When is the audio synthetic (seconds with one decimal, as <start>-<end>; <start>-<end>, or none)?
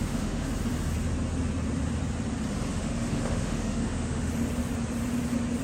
0.0-0.5; 2.7-4.3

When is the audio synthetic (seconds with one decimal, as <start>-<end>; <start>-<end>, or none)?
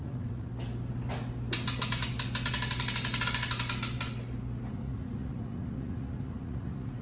0.0-0.5; 4.7-7.0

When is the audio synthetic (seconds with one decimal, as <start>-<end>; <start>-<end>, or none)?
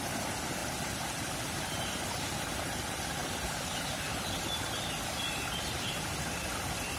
none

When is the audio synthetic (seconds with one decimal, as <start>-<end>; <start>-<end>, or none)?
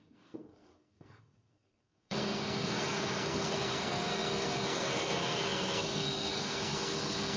0.0-7.4